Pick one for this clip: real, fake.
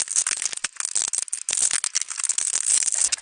real